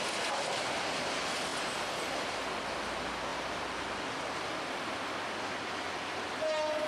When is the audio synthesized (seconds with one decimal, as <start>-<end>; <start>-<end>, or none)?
none